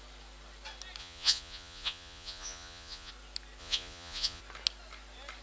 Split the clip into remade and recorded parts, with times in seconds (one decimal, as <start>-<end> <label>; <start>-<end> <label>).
0.0-1.0 recorded; 1.0-3.1 remade; 3.1-3.6 recorded; 3.6-4.4 remade; 4.4-5.4 recorded